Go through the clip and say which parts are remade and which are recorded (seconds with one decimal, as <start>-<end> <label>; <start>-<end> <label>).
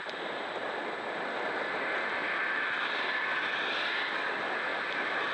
0.0-5.3 recorded